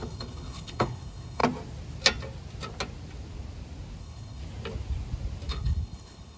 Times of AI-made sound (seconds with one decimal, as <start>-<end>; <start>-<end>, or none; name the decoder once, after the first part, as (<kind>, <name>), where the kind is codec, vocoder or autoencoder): 0.0-1.4 (codec, HILCodec); 4.0-4.4; 5.5-6.4